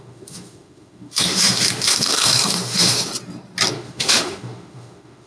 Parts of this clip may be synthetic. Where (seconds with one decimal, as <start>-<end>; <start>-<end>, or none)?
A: 0.0-3.1; 3.7-5.3